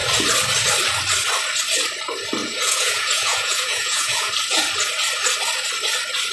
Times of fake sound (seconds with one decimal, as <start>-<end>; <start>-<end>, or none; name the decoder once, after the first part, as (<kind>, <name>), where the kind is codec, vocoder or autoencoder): 2.4-4.3 (vocoder, Vocos)